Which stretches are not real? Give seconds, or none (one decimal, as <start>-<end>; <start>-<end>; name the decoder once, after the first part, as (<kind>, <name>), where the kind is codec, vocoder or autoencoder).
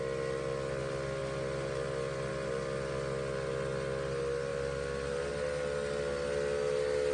1.2-2.3 (vocoder, BigVGAN v2); 4.5-5.3